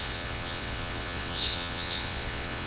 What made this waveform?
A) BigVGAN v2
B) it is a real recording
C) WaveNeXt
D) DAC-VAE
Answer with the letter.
C